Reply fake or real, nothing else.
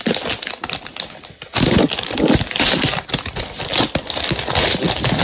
real